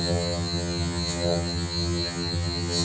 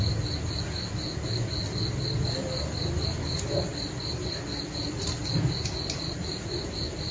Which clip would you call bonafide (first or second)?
second